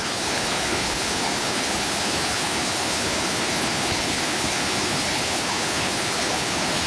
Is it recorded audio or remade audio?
remade